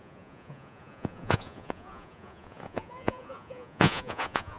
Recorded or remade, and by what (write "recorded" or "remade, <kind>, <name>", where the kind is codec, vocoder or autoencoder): remade, vocoder, Vocos